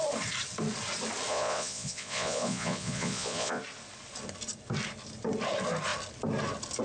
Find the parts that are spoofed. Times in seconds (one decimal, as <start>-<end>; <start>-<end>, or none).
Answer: 1.3-3.6